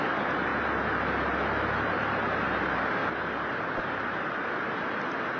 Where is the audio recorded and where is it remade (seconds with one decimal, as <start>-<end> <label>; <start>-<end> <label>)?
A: 0.0-0.5 remade; 0.5-1.8 recorded; 1.8-3.0 remade; 3.0-5.4 recorded